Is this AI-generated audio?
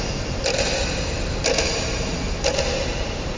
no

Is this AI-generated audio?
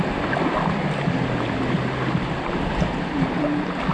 no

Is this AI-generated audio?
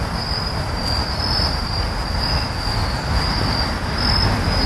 no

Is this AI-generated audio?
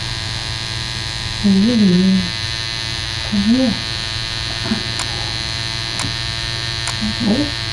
no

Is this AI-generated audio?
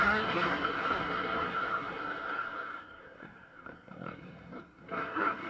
yes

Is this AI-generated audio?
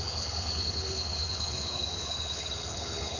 yes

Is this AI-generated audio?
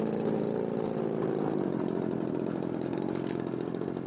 no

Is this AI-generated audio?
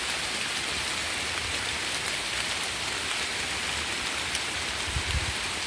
no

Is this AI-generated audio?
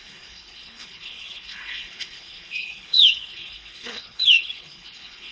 yes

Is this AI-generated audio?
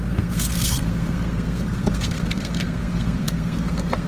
yes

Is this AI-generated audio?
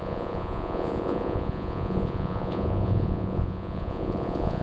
yes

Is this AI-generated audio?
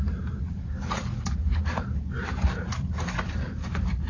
yes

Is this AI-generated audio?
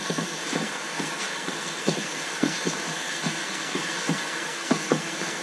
yes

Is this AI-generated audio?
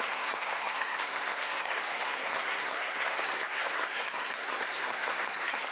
yes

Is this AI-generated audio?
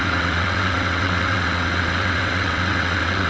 yes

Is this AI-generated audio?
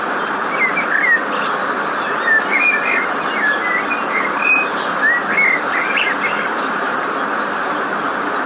no